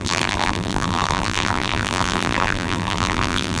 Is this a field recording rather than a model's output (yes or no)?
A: no